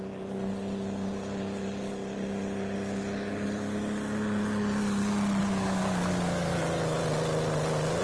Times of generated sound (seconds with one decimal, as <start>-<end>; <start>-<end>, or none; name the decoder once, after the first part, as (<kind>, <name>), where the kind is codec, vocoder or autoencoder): 5.4-6.6 (codec, DAC)